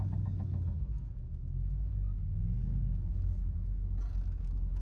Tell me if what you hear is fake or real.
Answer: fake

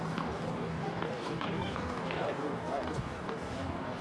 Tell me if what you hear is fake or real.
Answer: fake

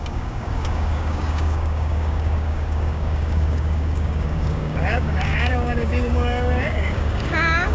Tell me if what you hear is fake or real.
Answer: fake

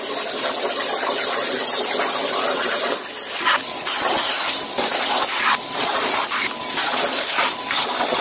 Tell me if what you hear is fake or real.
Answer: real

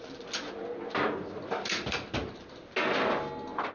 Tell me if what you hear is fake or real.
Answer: real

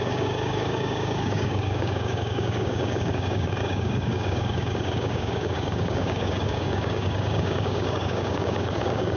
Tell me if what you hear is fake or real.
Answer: fake